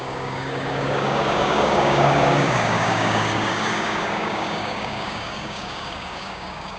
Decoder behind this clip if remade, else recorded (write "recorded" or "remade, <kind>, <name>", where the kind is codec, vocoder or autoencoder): remade, codec, DAC